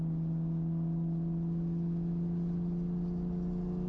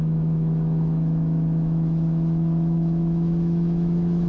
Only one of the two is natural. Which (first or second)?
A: first